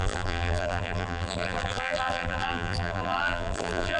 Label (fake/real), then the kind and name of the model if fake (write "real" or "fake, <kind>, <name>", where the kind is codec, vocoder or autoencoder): fake, vocoder, BigVGAN v2